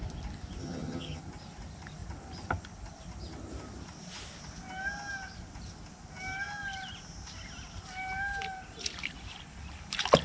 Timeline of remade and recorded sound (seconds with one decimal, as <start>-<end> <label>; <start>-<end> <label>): 0.0-0.6 recorded; 0.6-1.2 remade; 1.2-10.2 recorded